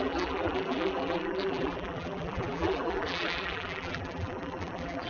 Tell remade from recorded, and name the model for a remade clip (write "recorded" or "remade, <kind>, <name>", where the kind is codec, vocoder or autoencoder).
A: remade, vocoder, BigVGAN v2